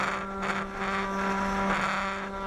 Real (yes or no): yes